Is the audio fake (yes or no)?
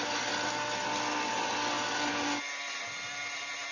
no